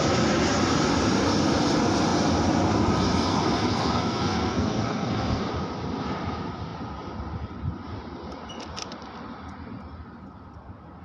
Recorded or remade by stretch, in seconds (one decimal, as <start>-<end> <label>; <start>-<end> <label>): 0.0-3.3 recorded; 3.3-5.4 remade; 5.4-11.0 recorded